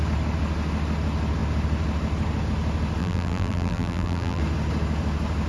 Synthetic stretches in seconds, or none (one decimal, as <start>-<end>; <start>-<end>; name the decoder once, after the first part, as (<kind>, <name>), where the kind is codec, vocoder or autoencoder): 3.0-4.4 (vocoder, BigVGAN v2)